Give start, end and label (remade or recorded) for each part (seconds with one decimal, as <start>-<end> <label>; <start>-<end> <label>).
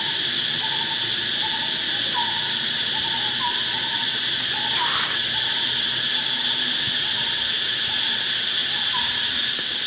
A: 0.0-8.6 recorded; 8.6-9.5 remade; 9.5-9.9 recorded